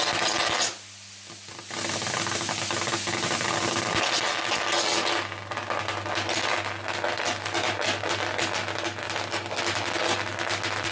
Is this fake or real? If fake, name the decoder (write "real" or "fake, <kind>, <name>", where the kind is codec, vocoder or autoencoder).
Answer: real